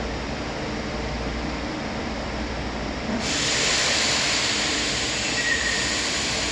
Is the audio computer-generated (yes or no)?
yes